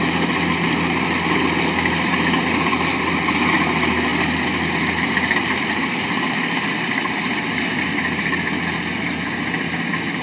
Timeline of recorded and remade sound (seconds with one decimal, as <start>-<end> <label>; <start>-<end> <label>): 0.0-10.2 recorded